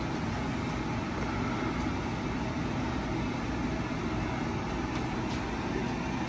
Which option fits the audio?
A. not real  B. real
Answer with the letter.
B